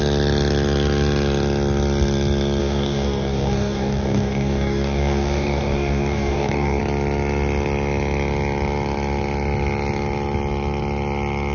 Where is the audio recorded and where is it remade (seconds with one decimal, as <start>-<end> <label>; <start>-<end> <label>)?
0.0-2.6 recorded; 2.6-6.8 remade; 6.8-11.5 recorded